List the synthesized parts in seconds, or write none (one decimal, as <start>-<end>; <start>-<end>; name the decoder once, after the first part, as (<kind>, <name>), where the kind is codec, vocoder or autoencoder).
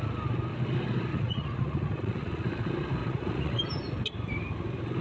1.1-2.5 (vocoder, Vocos); 3.0-3.6